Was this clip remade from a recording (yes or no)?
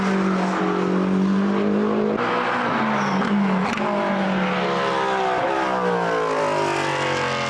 no